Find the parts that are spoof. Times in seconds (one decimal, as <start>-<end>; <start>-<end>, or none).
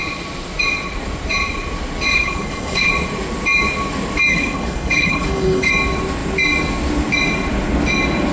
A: 2.1-2.9; 4.3-5.7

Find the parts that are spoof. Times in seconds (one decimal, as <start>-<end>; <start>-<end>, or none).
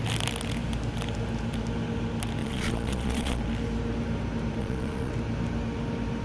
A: 2.4-3.4; 4.6-5.1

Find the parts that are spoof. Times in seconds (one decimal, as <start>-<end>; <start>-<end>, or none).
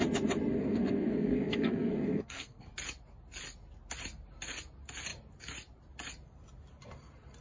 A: 0.5-2.7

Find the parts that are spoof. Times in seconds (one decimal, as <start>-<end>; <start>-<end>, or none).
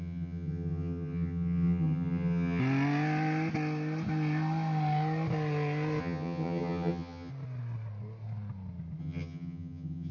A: 0.0-2.6; 6.0-7.3; 9.0-10.1